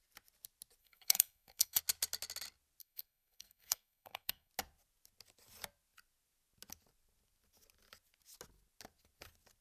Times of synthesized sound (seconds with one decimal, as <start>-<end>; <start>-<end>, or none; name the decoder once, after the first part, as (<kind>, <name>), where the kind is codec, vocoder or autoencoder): 0.8-1.8 (codec, SNAC); 2.8-4.5